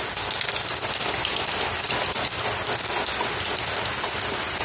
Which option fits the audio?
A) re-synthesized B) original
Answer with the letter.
B